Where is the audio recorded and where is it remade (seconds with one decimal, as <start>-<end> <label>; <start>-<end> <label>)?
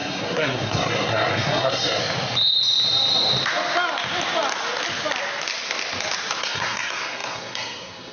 0.0-2.0 remade; 2.0-6.4 recorded; 6.4-8.1 remade